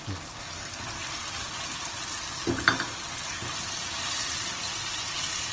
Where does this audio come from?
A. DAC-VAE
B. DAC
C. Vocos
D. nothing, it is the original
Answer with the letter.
D